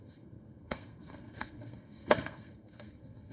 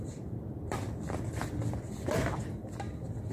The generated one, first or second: first